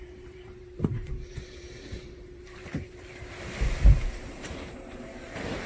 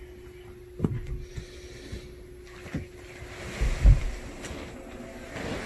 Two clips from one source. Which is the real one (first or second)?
second